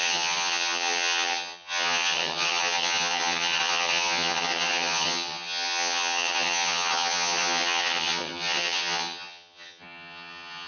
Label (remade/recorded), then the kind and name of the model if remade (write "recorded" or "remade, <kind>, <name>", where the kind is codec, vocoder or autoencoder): remade, vocoder, HiFi-GAN